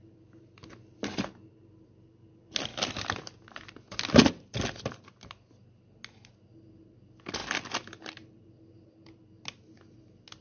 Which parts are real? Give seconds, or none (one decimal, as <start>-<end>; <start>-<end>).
0.0-10.4